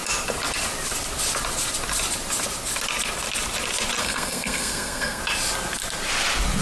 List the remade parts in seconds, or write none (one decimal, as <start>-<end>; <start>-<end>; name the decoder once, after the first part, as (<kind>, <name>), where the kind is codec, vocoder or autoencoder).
4.0-5.2 (codec, SNAC)